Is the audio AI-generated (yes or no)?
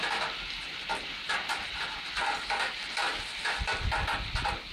no